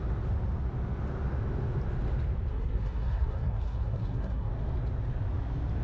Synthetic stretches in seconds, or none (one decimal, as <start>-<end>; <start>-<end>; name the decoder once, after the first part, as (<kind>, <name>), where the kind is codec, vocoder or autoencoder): 2.5-4.5 (codec, SNAC)